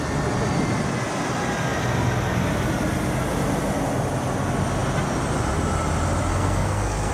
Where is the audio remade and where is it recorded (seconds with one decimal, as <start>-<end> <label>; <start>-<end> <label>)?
0.0-6.3 recorded; 6.3-7.1 remade